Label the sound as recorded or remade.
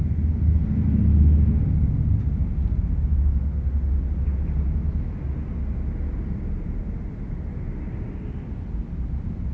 recorded